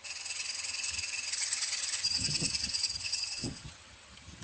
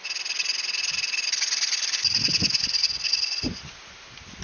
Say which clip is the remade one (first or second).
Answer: first